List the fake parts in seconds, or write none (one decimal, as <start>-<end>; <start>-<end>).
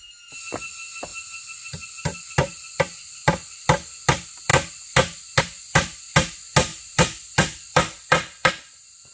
1.1-4.0; 6.7-8.5